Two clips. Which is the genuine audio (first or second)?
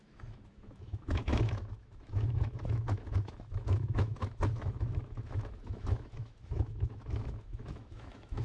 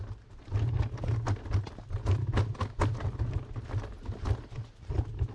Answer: second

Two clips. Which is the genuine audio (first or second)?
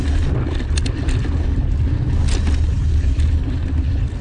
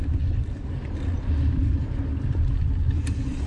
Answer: first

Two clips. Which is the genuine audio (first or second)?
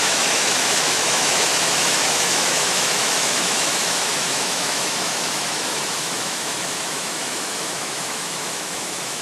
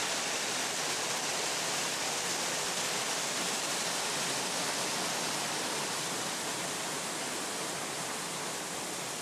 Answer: second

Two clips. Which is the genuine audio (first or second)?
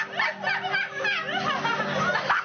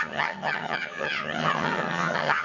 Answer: first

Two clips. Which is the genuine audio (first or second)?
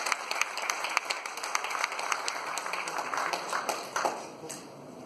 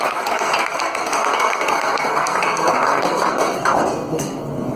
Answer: first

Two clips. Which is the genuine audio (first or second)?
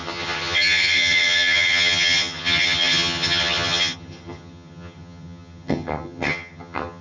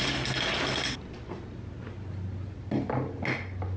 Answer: second